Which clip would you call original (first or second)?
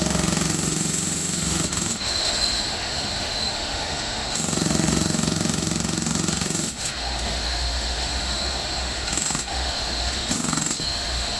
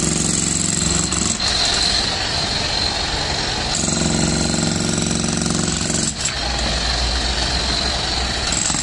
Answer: second